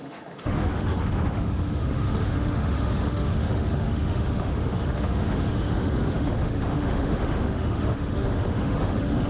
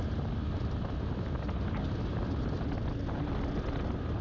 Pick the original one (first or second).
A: second